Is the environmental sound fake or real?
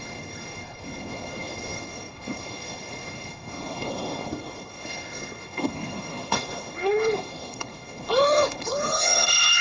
fake